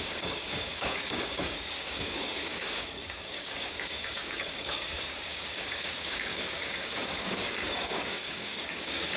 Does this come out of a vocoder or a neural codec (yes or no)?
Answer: yes